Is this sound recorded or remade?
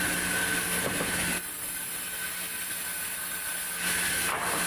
recorded